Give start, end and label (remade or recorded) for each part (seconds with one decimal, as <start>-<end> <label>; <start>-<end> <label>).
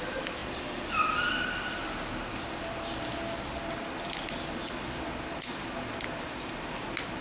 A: 0.0-7.2 recorded